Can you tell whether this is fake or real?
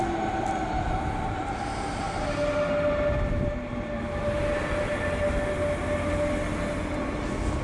real